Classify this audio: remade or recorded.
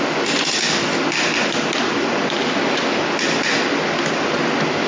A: recorded